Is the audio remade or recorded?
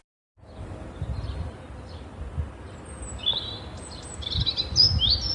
recorded